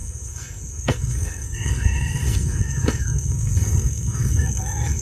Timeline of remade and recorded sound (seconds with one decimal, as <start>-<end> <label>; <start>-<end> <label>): 0.0-5.0 remade